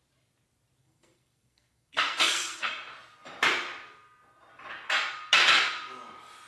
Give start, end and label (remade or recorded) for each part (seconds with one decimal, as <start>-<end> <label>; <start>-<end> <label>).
0.0-0.8 recorded; 0.8-2.7 remade; 2.7-6.5 recorded